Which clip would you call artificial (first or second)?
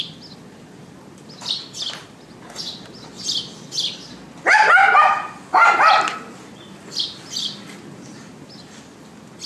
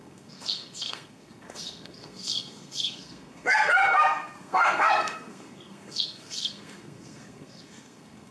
second